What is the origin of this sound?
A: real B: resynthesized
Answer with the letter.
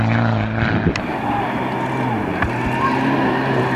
A